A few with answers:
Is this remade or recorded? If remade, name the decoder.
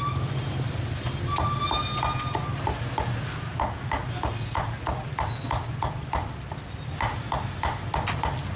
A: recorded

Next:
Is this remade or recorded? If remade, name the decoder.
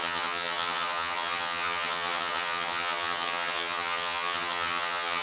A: remade, vocoder, HiFi-GAN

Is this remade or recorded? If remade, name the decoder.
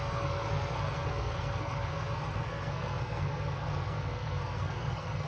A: remade, codec, SNAC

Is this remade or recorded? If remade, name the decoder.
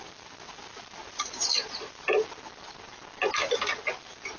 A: recorded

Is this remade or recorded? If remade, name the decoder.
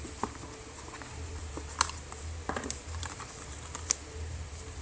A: recorded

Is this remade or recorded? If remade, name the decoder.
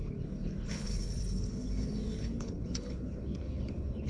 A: remade, codec, HILCodec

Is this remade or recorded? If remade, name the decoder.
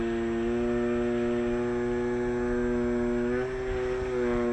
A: recorded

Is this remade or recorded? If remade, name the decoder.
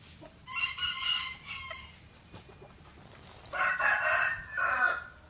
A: recorded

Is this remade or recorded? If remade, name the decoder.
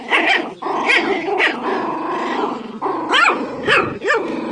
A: recorded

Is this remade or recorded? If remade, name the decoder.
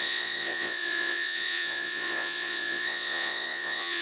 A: remade, vocoder, Vocos